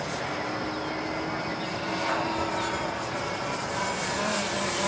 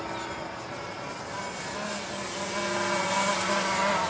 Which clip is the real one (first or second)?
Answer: second